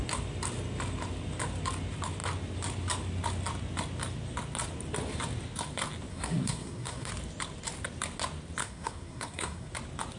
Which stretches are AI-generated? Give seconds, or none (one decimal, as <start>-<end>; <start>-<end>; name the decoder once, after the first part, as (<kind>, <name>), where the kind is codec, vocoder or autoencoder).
6.1-7.1 (codec, SNAC); 8.6-9.7